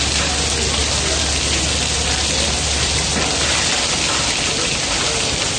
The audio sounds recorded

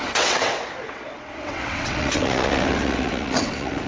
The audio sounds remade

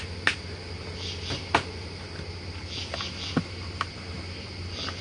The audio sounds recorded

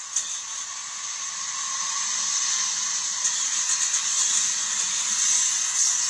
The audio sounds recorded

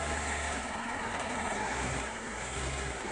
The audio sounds remade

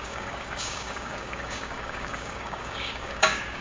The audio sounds remade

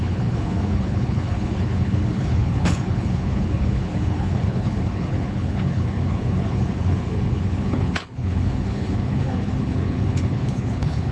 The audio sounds remade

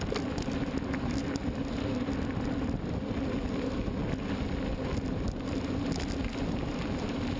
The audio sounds recorded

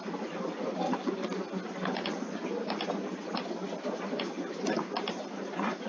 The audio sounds recorded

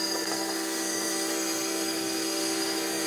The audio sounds remade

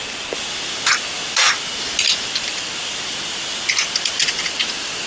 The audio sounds recorded